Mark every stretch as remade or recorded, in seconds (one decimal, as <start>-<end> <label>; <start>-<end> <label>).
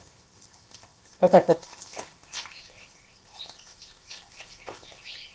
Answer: 0.0-5.3 remade